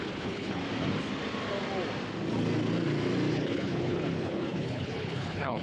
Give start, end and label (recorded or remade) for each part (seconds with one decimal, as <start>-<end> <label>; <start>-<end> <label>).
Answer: 0.0-0.6 remade; 0.6-3.3 recorded; 3.3-5.6 remade